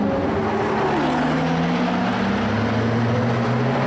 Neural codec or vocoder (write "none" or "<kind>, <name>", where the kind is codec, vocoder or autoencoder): none